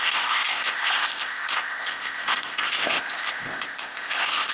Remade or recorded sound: remade